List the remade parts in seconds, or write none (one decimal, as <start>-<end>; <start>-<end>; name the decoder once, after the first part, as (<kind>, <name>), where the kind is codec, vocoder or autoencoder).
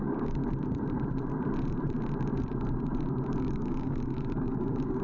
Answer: 0.0-0.4 (codec, DAC); 3.4-5.0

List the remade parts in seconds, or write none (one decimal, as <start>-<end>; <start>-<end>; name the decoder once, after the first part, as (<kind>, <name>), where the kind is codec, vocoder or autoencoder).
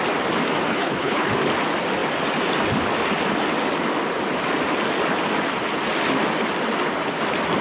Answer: 0.7-1.3 (codec, HILCodec)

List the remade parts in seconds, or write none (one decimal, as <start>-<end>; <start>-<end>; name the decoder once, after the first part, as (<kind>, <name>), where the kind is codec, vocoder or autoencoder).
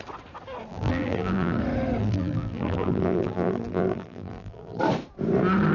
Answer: 0.7-1.6 (vocoder, BigVGAN v2); 2.0-4.8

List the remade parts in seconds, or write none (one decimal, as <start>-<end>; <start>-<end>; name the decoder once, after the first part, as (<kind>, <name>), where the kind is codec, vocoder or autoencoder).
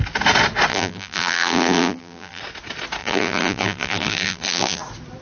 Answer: 0.7-2.4 (vocoder, BigVGAN v2); 3.0-4.8